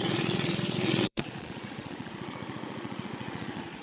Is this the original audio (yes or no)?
no